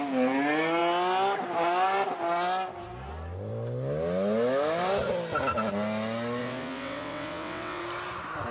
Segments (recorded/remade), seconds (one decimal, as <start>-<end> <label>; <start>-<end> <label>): 0.0-6.4 recorded; 6.4-7.8 remade; 7.8-8.5 recorded